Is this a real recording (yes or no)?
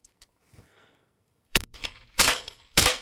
no